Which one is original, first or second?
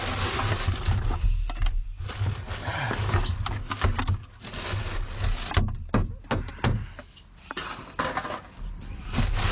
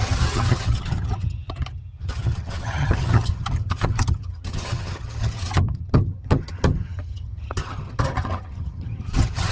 first